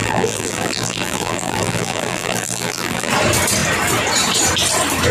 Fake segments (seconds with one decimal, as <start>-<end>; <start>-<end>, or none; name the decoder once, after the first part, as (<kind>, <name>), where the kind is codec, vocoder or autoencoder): 0.0-3.1 (vocoder, BigVGAN v2)